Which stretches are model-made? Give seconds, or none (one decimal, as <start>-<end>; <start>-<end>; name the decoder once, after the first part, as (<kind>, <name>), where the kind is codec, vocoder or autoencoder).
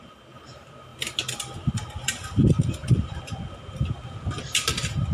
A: 2.8-5.1 (vocoder, BigVGAN v2)